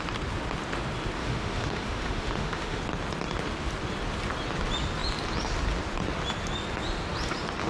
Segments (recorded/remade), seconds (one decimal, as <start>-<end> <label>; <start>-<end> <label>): 0.0-1.2 recorded; 1.2-2.8 remade; 2.8-7.7 recorded